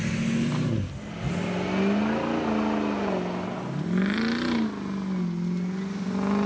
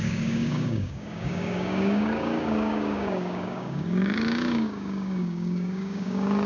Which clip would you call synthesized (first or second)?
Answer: second